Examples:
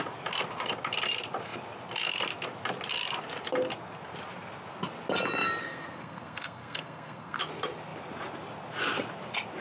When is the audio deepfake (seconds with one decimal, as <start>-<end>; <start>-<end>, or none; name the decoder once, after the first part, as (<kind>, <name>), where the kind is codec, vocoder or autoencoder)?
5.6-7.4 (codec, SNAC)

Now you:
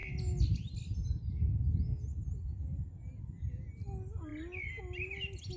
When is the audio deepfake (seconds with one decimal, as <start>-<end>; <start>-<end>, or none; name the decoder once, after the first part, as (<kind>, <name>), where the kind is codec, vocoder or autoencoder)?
none

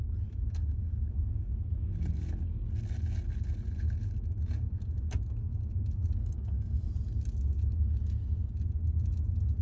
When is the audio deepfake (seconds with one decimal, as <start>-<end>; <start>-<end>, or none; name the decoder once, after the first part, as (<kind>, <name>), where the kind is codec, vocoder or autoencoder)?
6.2-6.9 (codec, SNAC)

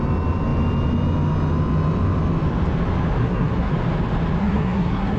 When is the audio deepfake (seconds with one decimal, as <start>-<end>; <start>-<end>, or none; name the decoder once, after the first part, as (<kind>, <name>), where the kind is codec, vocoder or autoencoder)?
3.2-3.7 (codec, SNAC); 4.4-5.2

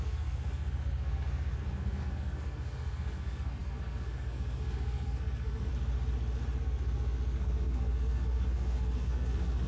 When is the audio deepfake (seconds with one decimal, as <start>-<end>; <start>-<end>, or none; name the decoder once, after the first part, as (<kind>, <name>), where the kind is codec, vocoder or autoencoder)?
0.0-5.7 (codec, SNAC); 6.6-9.7

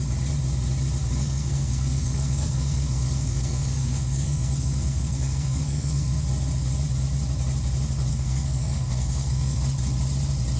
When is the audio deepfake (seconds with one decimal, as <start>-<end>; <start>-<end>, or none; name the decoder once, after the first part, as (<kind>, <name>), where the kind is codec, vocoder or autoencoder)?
1.2-6.2 (codec, SNAC); 8.1-9.6

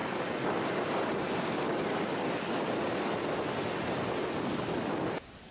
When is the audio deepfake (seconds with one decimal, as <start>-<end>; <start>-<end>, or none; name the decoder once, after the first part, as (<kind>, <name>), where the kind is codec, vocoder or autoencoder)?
none

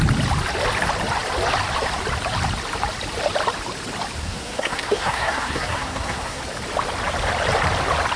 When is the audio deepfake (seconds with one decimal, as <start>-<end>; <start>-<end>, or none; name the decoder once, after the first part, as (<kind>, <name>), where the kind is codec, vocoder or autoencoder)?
4.2-6.4 (codec, SNAC)